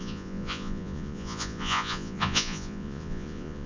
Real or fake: fake